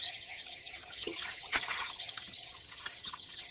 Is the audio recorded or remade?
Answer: remade